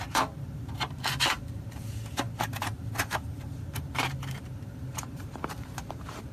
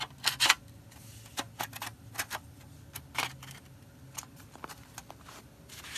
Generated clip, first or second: first